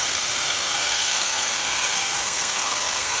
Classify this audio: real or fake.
fake